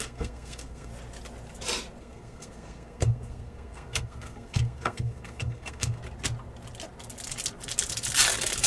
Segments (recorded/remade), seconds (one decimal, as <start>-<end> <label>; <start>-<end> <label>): 0.0-0.9 remade; 0.9-2.0 recorded; 2.0-6.0 remade; 6.0-8.7 recorded